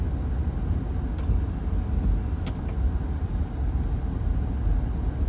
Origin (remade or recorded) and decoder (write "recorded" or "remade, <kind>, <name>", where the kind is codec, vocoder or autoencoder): recorded